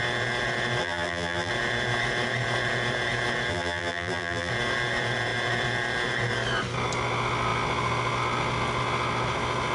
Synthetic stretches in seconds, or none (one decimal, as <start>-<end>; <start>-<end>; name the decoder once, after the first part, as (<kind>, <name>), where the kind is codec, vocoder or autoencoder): 0.8-1.5 (vocoder, BigVGAN v2); 3.5-4.5